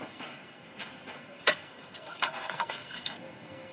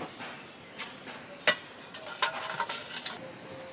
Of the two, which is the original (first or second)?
second